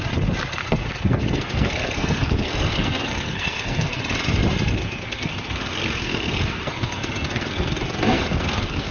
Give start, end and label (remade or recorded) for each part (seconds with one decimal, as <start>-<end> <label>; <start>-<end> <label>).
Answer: 0.0-0.6 recorded; 0.6-4.0 remade; 4.0-4.8 recorded; 4.8-8.9 remade